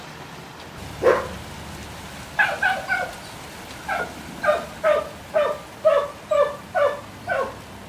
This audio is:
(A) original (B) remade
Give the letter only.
A